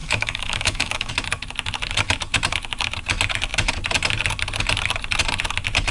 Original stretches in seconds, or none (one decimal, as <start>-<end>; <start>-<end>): 1.1-5.9